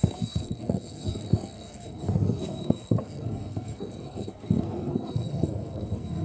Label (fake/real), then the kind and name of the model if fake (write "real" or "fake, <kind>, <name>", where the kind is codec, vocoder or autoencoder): fake, codec, SNAC